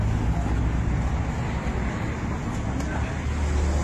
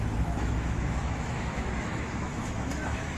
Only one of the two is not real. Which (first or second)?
second